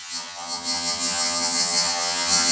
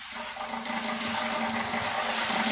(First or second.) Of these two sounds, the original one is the second